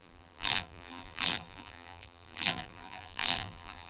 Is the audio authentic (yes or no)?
no